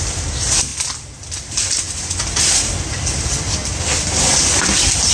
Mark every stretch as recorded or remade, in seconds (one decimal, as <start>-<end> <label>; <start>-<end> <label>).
0.0-5.1 recorded